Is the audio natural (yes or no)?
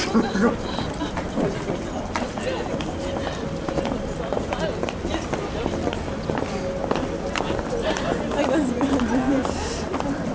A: yes